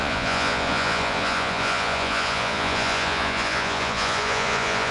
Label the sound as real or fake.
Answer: fake